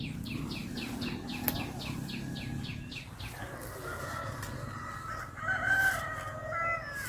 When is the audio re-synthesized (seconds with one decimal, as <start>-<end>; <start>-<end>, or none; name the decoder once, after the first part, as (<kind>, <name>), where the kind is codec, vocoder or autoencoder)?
none